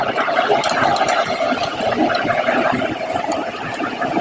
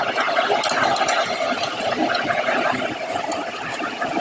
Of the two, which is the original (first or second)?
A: second